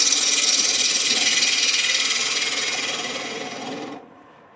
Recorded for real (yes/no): no